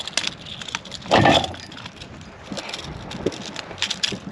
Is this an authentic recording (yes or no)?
yes